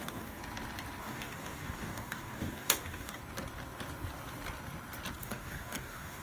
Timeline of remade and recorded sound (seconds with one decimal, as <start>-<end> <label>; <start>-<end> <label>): 0.0-0.4 remade; 0.4-1.0 recorded; 1.0-3.2 remade; 3.2-5.2 recorded; 5.2-6.2 remade